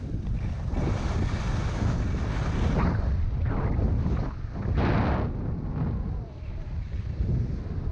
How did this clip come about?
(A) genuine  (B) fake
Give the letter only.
A